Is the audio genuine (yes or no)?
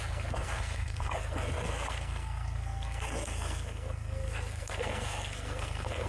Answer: no